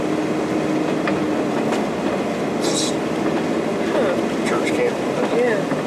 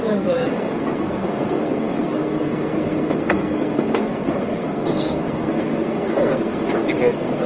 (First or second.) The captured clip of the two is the first